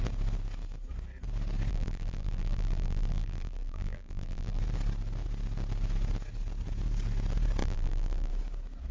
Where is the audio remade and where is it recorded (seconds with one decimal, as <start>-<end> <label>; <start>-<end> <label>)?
0.0-1.7 recorded; 1.7-4.6 remade; 4.6-7.6 recorded; 7.6-8.3 remade; 8.3-8.9 recorded